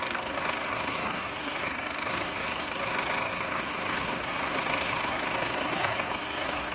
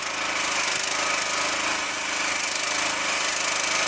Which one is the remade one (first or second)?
first